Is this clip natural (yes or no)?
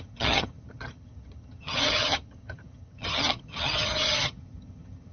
no